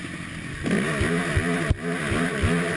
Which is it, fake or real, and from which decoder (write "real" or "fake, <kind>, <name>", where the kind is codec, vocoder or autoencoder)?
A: real